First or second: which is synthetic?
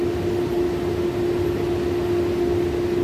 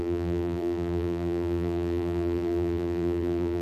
second